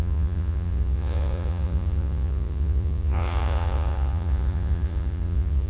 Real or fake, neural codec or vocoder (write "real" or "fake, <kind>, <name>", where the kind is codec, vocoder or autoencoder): fake, vocoder, Vocos